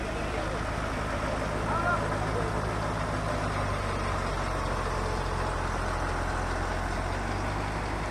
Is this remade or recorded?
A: recorded